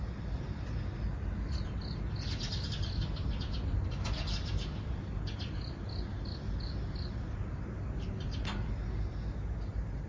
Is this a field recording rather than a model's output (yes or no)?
yes